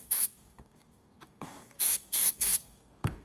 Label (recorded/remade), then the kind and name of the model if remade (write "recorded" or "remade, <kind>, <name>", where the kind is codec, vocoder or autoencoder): remade, codec, DAC